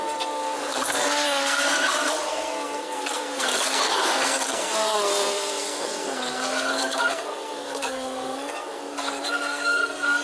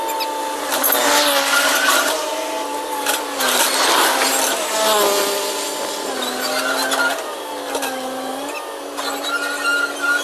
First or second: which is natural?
second